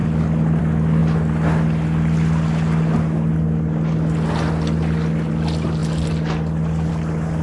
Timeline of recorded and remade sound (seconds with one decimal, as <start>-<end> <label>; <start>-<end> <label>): 0.0-7.4 recorded